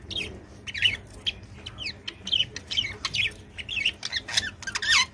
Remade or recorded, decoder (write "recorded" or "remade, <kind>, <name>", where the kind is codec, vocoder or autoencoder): recorded